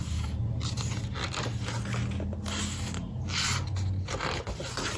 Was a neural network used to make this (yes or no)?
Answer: no